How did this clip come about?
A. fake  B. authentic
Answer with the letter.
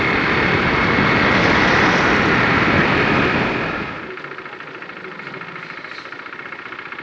B